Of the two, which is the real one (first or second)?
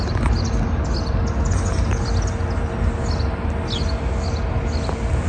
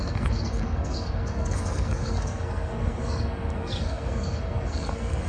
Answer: first